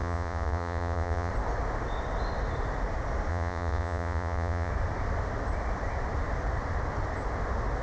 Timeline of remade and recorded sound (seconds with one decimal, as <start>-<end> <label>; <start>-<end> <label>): 0.0-1.3 remade; 1.3-3.3 recorded; 3.3-4.7 remade; 4.7-7.8 recorded